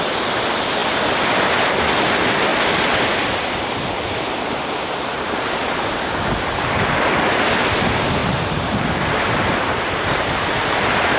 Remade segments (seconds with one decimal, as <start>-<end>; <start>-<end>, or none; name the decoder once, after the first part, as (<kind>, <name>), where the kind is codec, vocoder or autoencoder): 8.2-10.5 (vocoder, BigVGAN v2)

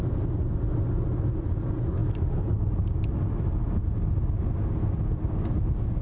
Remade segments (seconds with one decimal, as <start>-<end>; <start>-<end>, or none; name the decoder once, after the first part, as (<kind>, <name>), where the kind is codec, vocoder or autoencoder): none